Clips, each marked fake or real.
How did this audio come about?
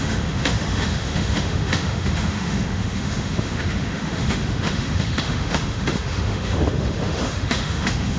fake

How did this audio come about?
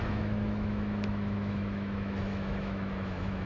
fake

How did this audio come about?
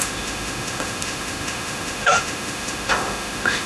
fake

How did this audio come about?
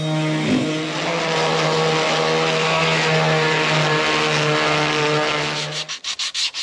real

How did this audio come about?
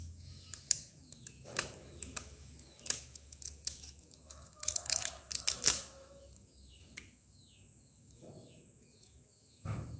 fake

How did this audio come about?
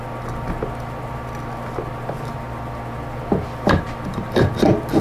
real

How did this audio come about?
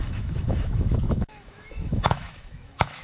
fake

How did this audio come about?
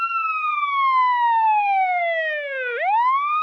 fake